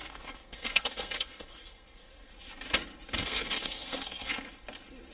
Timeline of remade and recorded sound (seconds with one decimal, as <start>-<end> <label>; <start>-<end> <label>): 0.0-2.3 remade; 2.3-3.2 recorded; 3.2-4.3 remade; 4.3-5.1 recorded